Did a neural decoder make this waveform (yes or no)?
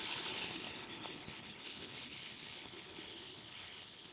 yes